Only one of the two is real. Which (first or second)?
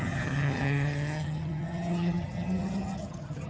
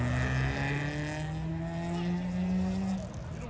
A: second